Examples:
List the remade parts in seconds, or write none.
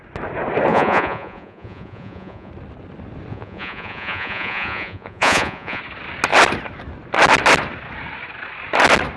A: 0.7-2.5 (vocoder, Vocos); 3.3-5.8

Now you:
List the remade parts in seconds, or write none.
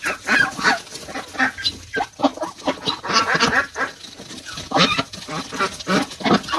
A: none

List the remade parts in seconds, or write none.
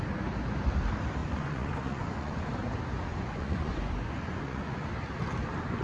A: 1.2-2.5 (vocoder, Vocos); 3.1-4.9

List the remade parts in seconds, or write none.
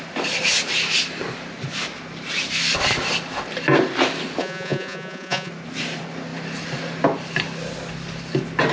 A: 4.4-5.5 (vocoder, Vocos)